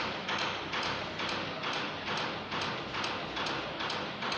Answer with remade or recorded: recorded